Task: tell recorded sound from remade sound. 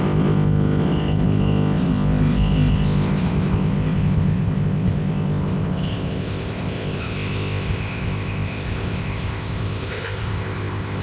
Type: remade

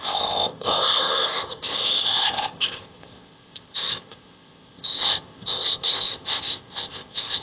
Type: remade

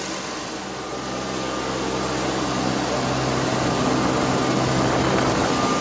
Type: recorded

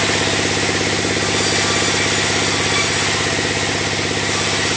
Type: recorded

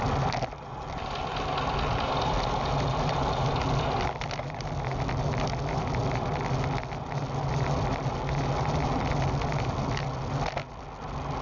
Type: recorded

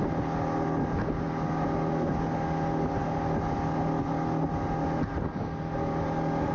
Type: recorded